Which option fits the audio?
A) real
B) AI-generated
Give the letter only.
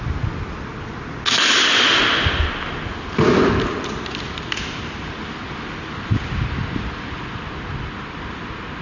A